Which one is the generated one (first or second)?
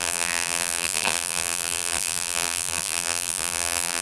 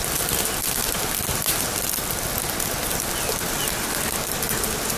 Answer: first